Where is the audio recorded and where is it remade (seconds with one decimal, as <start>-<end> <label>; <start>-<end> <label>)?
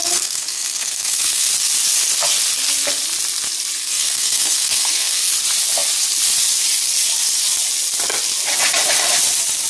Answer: 0.0-1.5 remade; 1.5-3.8 recorded; 3.8-5.3 remade; 5.3-9.7 recorded